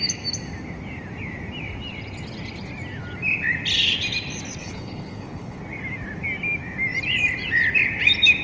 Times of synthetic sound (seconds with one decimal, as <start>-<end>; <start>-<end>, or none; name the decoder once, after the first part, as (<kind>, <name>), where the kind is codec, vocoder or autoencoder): 4.6-5.6 (codec, HILCodec)